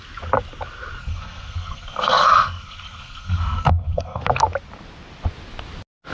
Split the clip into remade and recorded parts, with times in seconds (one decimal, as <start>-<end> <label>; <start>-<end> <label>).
0.0-1.0 recorded; 1.0-4.2 remade; 4.2-6.1 recorded